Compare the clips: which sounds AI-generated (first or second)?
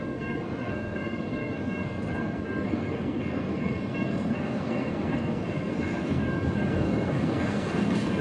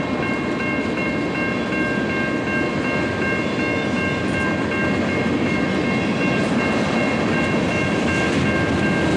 first